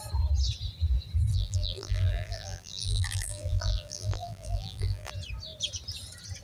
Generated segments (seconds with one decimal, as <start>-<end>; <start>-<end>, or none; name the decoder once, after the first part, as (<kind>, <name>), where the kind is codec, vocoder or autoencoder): 1.3-5.1 (vocoder, BigVGAN v2)